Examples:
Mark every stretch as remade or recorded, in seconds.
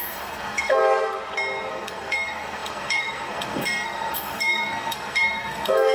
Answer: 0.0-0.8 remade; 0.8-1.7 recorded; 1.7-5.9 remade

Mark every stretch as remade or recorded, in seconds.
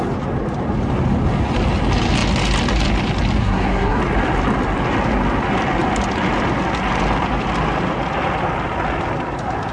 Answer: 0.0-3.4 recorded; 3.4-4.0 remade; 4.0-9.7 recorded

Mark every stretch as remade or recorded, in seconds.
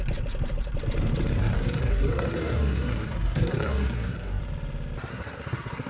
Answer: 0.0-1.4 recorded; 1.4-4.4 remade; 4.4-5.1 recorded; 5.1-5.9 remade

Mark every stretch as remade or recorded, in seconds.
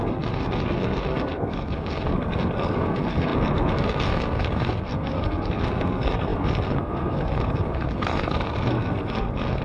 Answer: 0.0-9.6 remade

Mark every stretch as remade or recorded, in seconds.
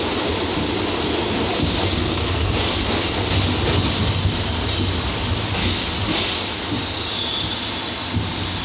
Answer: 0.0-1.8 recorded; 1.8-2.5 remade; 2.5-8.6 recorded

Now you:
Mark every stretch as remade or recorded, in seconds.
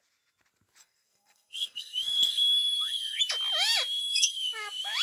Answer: 0.0-0.8 recorded; 0.8-3.2 remade; 3.2-4.0 recorded; 4.0-4.5 remade; 4.5-5.0 recorded